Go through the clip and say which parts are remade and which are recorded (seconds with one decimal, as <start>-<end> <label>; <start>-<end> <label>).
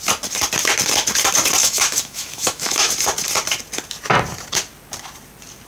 0.0-1.6 recorded; 1.6-2.9 remade; 2.9-5.7 recorded